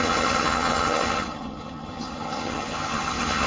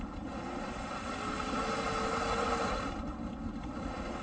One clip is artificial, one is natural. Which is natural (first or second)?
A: second